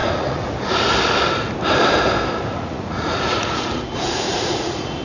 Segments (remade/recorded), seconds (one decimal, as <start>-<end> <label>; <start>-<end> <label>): 0.0-0.5 remade; 0.5-2.5 recorded; 2.5-5.0 remade